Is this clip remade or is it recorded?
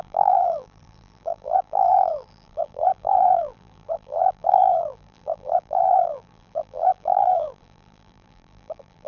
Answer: remade